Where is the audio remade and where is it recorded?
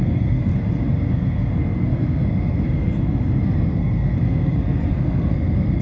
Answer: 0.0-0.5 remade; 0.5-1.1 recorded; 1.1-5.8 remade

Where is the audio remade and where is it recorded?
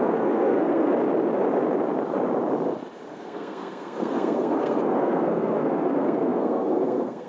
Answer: 0.0-0.9 remade; 0.9-3.1 recorded; 3.1-7.3 remade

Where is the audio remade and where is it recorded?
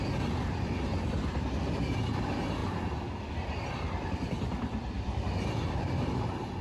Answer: 0.0-2.6 recorded; 2.6-6.6 remade